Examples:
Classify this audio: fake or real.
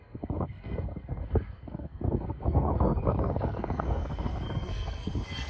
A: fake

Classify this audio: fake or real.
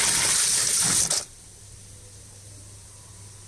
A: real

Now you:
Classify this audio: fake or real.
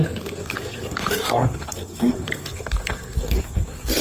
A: fake